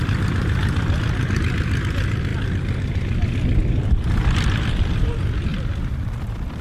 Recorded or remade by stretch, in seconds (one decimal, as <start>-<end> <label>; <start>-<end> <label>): 0.0-2.3 remade; 2.3-3.8 recorded; 3.8-5.5 remade; 5.5-6.0 recorded; 6.0-6.6 remade